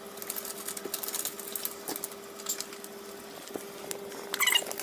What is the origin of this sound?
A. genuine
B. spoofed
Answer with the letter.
A